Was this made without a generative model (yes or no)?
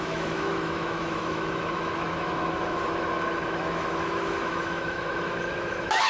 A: no